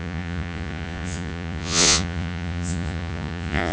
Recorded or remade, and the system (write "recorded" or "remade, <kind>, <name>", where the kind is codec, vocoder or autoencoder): remade, vocoder, Vocos